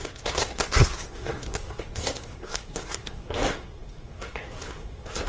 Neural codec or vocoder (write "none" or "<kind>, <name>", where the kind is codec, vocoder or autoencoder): codec, SNAC